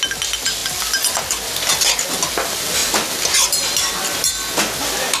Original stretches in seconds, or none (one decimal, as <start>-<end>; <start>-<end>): 0.0-5.2